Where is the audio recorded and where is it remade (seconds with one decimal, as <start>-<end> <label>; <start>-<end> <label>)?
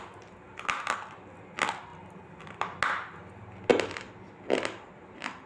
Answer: 0.0-5.5 recorded